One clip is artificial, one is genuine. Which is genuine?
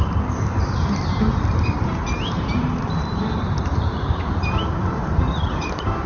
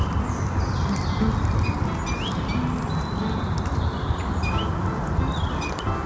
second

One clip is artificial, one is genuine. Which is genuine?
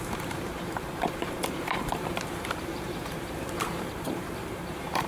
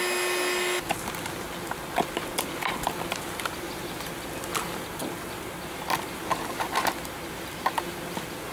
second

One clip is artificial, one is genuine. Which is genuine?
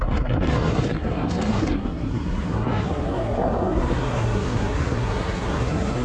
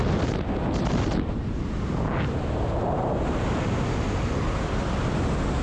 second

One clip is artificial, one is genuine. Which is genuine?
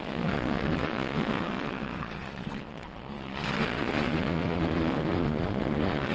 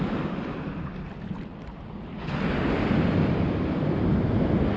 second